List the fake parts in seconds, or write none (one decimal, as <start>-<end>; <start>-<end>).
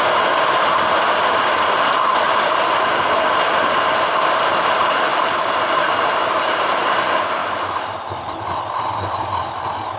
none